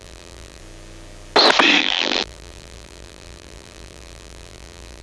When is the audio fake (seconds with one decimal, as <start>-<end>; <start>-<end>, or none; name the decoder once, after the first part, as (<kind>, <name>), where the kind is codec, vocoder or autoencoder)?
0.0-0.6 (vocoder, BigVGAN v2); 1.8-5.0